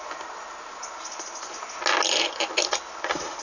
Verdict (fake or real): real